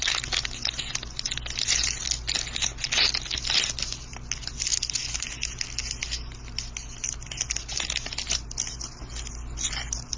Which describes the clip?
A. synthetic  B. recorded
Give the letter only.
B